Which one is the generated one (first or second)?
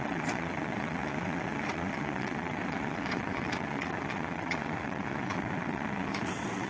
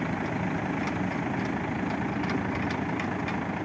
first